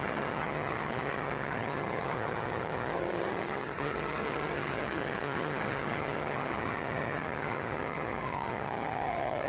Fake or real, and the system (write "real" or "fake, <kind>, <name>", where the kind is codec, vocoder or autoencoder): fake, vocoder, HiFi-GAN